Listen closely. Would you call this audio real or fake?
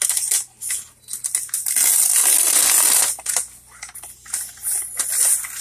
real